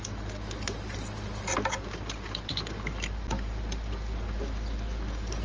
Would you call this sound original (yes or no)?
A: yes